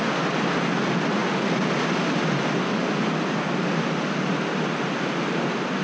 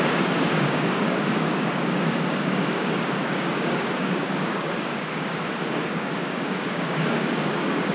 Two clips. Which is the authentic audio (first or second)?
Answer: first